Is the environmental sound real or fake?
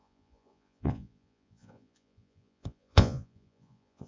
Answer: fake